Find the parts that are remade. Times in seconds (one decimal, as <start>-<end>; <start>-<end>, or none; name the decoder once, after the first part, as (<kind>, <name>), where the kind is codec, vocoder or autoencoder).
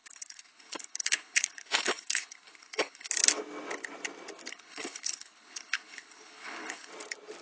0.0-3.1 (codec, HILCodec); 4.5-6.9